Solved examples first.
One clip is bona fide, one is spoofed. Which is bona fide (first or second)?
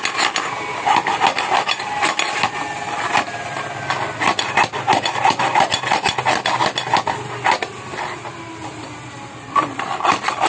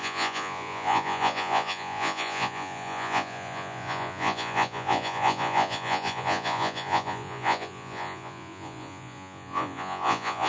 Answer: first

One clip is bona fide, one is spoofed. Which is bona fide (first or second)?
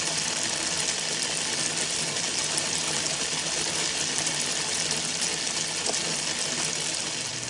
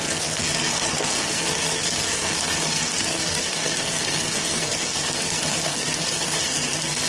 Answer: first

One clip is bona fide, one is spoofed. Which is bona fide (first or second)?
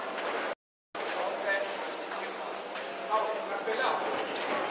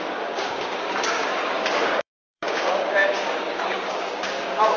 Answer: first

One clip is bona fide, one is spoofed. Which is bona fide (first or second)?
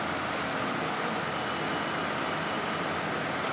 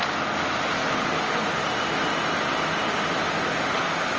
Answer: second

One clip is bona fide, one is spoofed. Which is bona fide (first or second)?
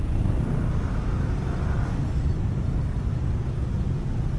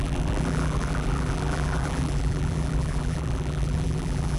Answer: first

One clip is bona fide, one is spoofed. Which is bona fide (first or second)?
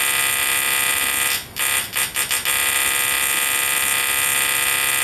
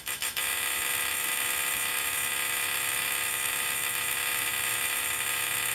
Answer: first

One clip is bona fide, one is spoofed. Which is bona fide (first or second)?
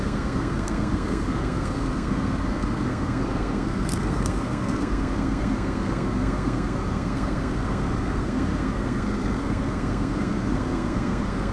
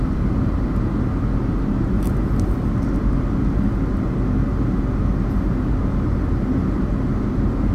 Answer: second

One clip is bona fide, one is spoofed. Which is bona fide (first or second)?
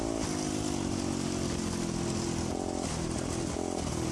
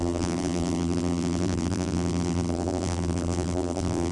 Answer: first